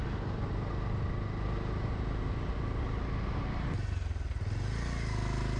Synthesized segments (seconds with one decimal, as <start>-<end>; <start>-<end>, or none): none